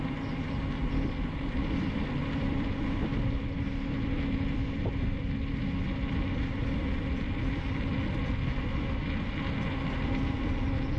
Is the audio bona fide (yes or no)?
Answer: yes